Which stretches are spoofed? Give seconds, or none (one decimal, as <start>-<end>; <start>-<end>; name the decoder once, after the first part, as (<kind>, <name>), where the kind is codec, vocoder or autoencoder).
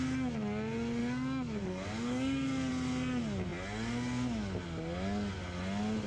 1.0-2.7 (codec, DAC)